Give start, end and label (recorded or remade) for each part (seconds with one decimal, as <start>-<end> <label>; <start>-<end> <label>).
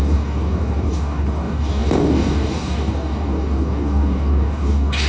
0.0-5.1 remade